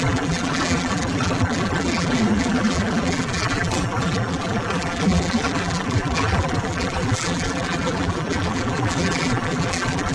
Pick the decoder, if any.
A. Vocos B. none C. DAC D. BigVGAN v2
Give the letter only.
D